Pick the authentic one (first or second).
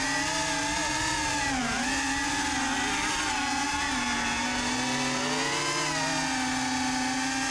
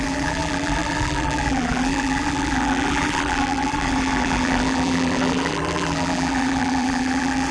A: first